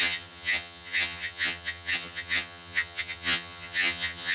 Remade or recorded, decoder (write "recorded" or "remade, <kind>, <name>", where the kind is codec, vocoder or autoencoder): remade, vocoder, HiFi-GAN